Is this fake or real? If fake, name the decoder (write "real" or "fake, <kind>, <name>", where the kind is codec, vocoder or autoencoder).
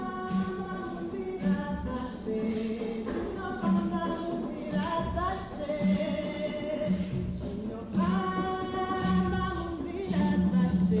real